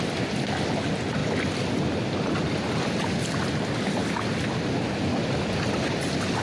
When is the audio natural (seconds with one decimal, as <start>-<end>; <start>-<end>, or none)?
0.0-6.4